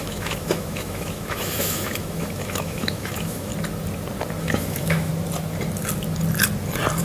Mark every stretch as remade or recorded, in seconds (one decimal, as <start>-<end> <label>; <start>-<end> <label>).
0.0-3.5 remade; 3.5-4.4 recorded; 4.4-5.1 remade; 5.1-7.0 recorded